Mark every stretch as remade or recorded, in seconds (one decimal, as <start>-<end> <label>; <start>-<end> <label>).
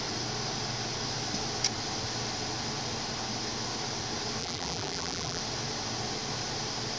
0.0-4.4 recorded; 4.4-5.4 remade; 5.4-7.0 recorded